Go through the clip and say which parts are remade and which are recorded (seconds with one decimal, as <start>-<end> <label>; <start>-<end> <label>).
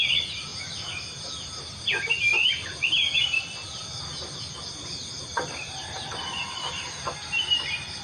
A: 0.0-8.0 recorded